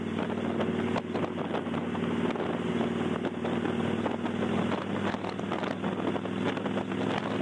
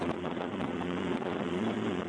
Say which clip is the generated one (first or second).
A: second